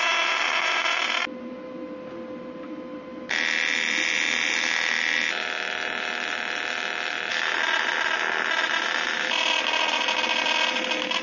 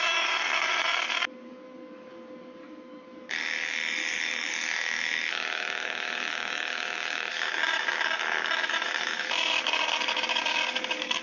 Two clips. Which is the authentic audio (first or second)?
first